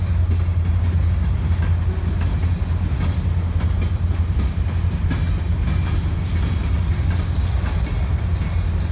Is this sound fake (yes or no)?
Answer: no